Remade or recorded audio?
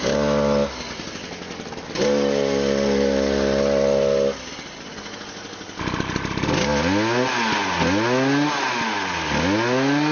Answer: recorded